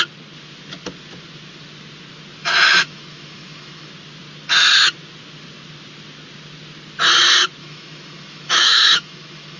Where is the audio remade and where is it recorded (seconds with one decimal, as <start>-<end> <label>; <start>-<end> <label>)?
0.0-2.4 recorded; 2.4-3.9 remade; 3.9-7.6 recorded; 7.6-9.6 remade